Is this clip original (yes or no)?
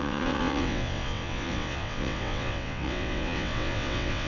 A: no